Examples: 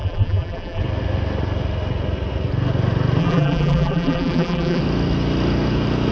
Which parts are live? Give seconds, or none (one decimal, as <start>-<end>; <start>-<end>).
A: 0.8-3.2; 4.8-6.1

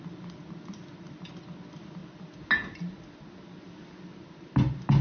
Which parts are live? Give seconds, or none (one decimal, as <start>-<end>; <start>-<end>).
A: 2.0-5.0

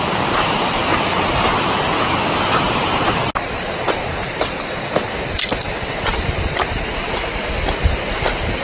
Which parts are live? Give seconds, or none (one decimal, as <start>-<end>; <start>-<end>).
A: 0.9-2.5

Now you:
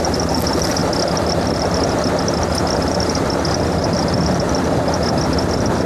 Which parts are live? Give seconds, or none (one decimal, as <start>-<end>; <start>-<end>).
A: 0.0-5.9